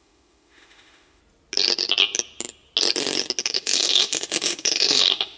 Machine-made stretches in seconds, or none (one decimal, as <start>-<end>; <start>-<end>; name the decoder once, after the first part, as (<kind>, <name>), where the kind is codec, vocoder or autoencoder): 0.0-1.2 (autoencoder, DAC-VAE); 3.4-5.4